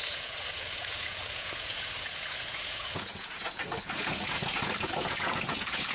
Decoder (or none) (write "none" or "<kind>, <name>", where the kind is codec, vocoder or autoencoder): vocoder, Vocos